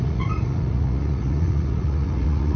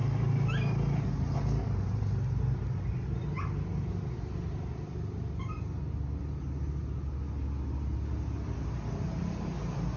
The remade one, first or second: first